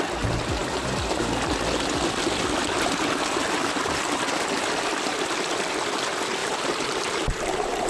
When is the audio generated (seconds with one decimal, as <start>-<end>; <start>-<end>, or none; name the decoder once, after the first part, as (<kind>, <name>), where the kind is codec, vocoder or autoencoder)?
6.4-7.9 (vocoder, BigVGAN v2)